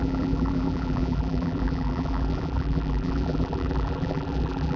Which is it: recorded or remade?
remade